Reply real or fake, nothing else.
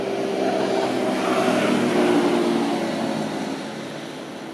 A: real